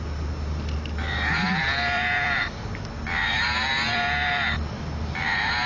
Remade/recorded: remade